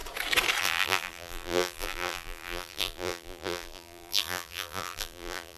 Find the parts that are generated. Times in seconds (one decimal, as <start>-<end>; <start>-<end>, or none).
0.6-5.6